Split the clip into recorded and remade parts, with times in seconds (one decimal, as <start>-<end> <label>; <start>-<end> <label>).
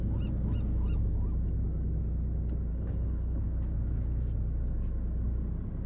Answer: 0.0-2.7 recorded; 2.7-3.4 remade; 3.4-5.9 recorded